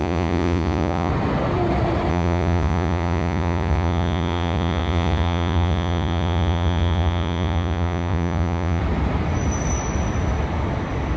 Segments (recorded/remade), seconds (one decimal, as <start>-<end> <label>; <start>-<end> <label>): 0.0-1.1 remade; 1.1-2.1 recorded; 2.1-8.8 remade; 8.8-11.2 recorded

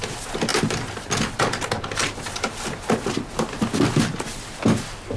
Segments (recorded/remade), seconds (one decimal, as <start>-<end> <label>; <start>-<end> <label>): 0.0-5.2 recorded

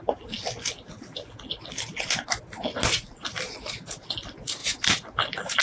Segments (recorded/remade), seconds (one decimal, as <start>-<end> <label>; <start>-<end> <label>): 0.0-5.6 recorded

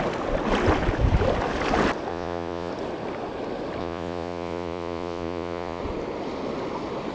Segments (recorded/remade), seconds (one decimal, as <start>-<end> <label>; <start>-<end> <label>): 0.0-2.1 recorded; 2.1-2.7 remade; 2.7-3.8 recorded; 3.8-5.8 remade; 5.8-7.1 recorded

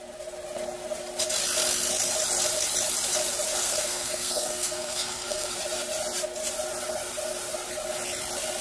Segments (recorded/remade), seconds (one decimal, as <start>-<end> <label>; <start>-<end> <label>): 0.0-3.6 recorded; 3.6-5.5 remade; 5.5-8.6 recorded

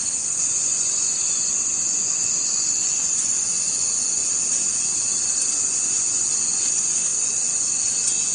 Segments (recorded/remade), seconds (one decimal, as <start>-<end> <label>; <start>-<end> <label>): 0.0-4.2 remade; 4.2-5.6 recorded; 5.6-8.3 remade

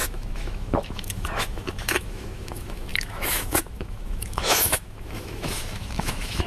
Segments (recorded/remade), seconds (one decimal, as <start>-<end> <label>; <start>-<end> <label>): 0.0-6.5 remade